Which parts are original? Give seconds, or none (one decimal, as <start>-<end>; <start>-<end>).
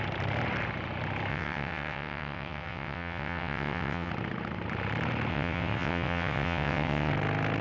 0.0-1.3; 4.1-5.3; 7.1-7.6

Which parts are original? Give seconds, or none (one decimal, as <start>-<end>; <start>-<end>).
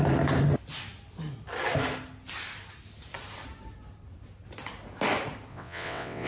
0.0-5.5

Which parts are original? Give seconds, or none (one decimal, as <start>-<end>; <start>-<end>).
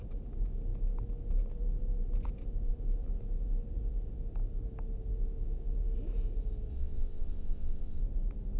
0.0-6.7; 8.0-8.6